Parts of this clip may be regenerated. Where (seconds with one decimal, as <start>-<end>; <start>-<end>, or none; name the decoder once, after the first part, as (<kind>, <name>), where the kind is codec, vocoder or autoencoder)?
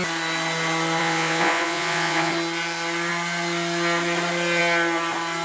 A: 1.0-2.3 (vocoder, Vocos)